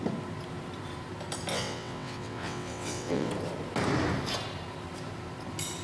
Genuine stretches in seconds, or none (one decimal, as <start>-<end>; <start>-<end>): 0.0-1.5; 3.3-5.8